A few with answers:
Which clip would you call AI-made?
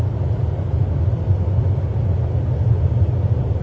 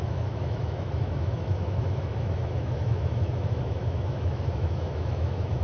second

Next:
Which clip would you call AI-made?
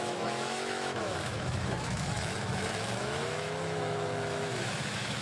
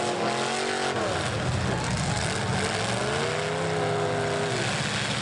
first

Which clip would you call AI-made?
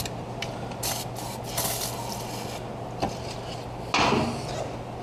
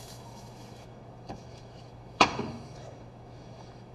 second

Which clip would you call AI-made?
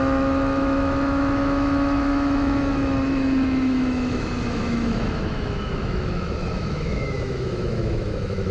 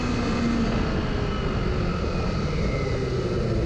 first